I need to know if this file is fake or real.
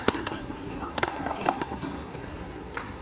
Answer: fake